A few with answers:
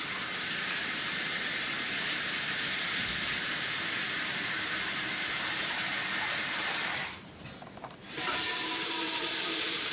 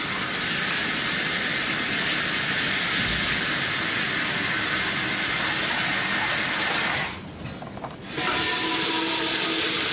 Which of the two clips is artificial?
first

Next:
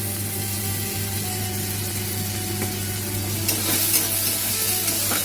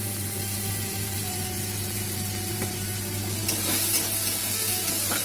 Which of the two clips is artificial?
second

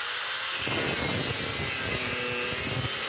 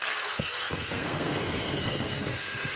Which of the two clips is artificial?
second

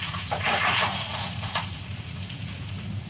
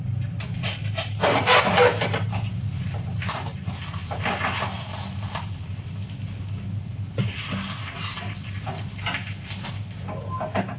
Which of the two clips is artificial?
first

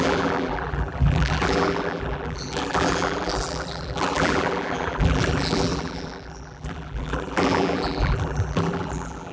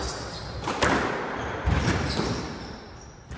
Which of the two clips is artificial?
first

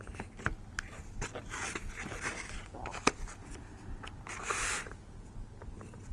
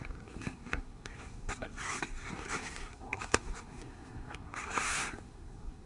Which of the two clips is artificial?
second